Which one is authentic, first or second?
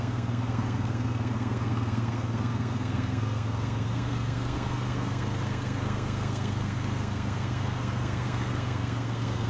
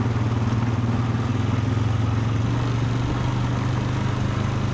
second